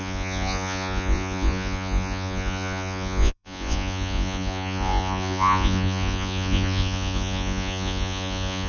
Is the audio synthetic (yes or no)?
yes